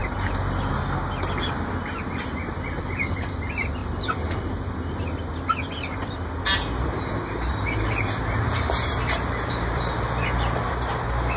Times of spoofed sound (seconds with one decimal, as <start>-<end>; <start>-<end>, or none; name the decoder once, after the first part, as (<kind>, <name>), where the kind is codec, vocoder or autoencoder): 3.8-4.7 (vocoder, BigVGAN v2); 6.5-11.4